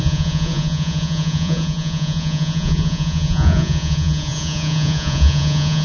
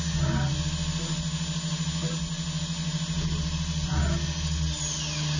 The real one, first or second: second